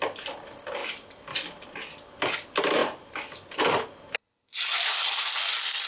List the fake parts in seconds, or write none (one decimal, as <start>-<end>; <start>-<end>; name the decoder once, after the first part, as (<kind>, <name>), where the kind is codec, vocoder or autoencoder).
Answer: none